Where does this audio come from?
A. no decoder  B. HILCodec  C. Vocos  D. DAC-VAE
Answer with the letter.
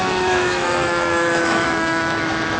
D